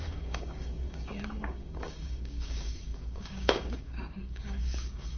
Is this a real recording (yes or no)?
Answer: no